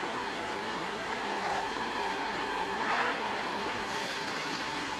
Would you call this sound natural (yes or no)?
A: no